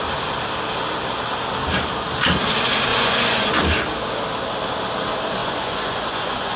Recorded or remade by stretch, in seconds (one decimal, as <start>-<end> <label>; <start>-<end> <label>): 0.0-2.9 recorded; 2.9-3.6 remade; 3.6-5.4 recorded; 5.4-6.6 remade

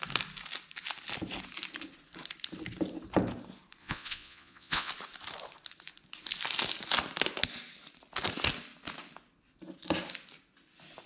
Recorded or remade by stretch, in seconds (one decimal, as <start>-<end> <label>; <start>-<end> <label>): 0.0-3.8 recorded; 3.8-4.9 remade; 4.9-11.1 recorded

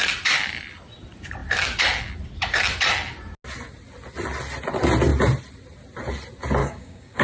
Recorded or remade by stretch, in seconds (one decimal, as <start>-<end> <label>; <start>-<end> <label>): 0.0-6.6 recorded; 6.6-7.2 remade

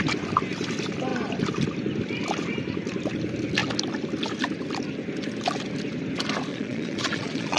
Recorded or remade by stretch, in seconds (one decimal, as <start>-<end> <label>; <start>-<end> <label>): 0.0-6.5 recorded; 6.5-7.6 remade

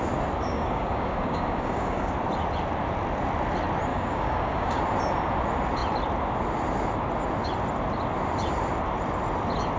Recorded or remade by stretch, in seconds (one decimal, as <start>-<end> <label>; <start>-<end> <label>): 0.0-0.4 recorded; 0.4-2.1 remade; 2.1-3.9 recorded; 3.9-4.8 remade; 4.8-9.8 recorded